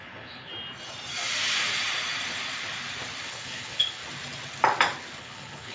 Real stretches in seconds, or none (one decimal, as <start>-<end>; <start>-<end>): 0.5-3.2; 4.0-5.2